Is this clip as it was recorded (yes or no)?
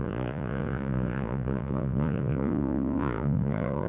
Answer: no